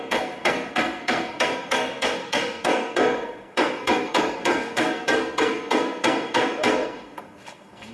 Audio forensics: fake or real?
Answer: fake